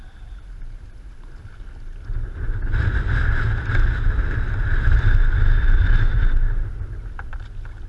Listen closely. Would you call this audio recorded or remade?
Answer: recorded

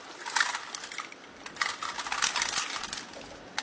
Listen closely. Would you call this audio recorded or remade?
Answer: recorded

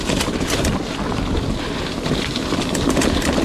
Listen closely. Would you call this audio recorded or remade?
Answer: recorded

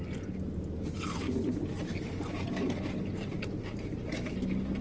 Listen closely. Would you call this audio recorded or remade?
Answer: recorded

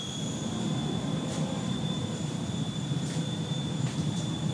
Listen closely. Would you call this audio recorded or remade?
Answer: remade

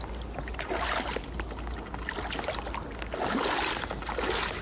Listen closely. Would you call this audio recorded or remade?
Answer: recorded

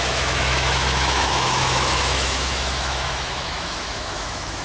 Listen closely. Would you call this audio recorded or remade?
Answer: remade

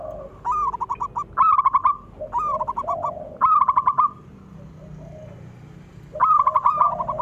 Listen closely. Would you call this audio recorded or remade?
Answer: recorded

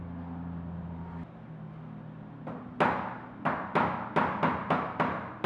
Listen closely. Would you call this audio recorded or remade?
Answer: recorded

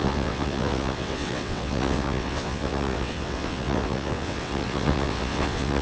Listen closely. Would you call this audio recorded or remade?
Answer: remade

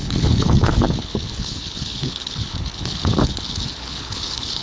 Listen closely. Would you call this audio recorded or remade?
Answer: remade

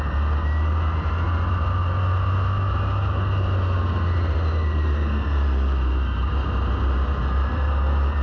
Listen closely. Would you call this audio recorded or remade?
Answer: recorded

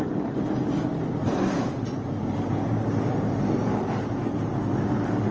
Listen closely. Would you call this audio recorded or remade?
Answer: recorded